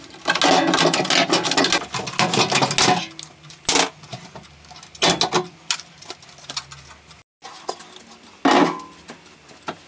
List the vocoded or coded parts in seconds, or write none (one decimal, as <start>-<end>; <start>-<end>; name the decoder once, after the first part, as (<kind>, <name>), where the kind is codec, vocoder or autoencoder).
none